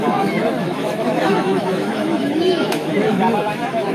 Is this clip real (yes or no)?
no